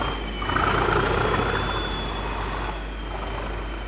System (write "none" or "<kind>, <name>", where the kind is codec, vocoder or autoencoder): none